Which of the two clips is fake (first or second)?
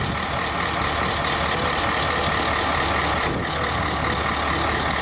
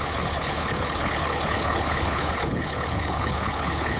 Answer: second